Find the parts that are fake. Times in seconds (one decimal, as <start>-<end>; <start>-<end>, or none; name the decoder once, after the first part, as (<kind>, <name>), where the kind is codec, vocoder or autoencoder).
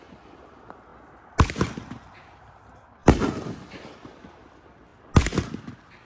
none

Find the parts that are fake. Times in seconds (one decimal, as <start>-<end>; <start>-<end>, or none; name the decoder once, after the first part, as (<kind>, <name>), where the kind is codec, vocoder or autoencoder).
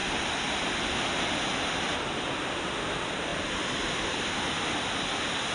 none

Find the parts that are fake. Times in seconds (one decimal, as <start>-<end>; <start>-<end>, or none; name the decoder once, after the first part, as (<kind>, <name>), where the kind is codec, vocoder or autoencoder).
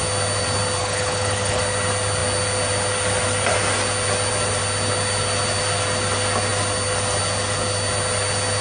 0.8-1.6 (codec, HILCodec)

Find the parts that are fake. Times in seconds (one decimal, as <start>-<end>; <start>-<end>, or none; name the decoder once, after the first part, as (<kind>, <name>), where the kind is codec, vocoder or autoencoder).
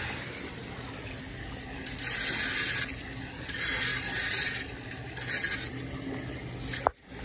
none